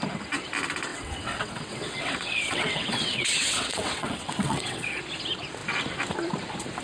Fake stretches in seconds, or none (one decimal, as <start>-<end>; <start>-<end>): 0.9-5.0